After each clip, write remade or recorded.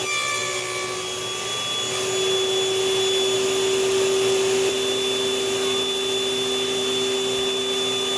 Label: recorded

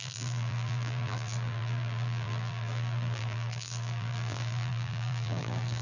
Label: remade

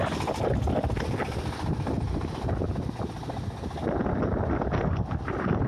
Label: recorded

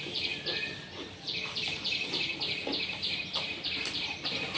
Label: remade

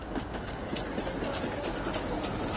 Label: recorded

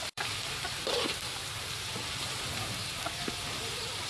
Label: remade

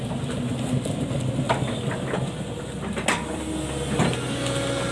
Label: recorded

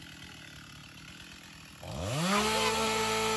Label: recorded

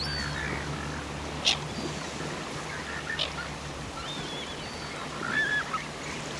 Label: recorded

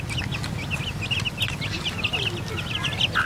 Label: recorded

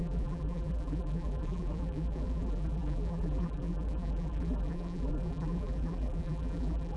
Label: remade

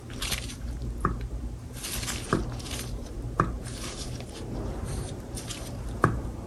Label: remade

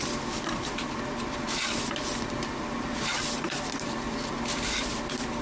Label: remade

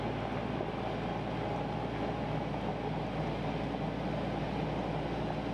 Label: recorded